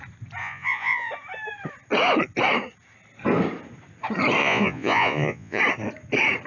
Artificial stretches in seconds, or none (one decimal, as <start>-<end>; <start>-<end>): 0.4-1.1; 4.4-5.6